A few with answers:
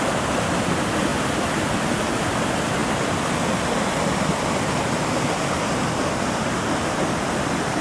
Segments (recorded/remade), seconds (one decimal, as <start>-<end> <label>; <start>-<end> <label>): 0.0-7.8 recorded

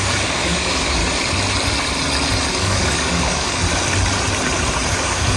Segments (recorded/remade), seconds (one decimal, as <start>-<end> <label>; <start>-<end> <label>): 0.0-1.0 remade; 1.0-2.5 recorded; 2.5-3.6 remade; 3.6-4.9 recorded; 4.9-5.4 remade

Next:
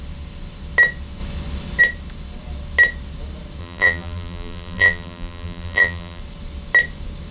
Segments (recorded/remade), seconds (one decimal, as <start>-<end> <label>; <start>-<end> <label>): 0.0-3.6 recorded; 3.6-6.2 remade; 6.2-7.3 recorded